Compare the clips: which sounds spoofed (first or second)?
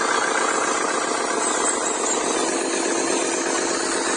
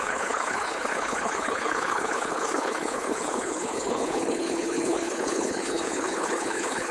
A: second